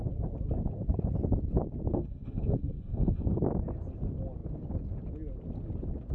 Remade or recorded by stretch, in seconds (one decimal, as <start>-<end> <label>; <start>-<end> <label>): 0.0-1.9 recorded; 1.9-3.4 remade; 3.4-6.1 recorded